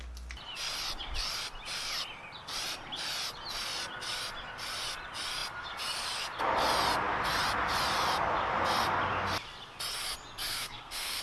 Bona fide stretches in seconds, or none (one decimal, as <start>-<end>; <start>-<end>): 0.0-10.5